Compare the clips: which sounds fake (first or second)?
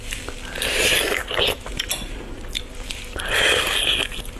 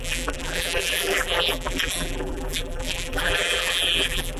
second